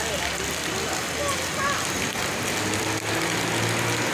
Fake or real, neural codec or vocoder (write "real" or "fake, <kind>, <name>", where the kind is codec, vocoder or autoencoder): real